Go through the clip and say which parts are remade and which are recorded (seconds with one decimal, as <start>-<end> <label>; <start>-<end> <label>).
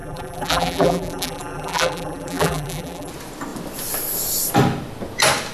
0.0-3.1 remade; 3.1-5.5 recorded